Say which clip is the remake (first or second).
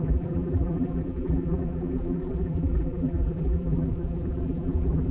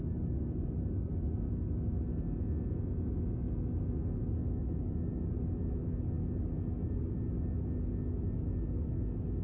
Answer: first